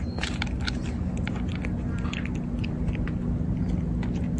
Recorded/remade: recorded